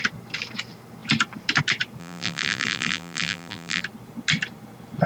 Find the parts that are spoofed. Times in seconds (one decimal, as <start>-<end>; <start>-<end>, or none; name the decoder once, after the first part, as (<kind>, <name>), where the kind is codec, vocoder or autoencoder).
2.0-3.8 (vocoder, BigVGAN v2)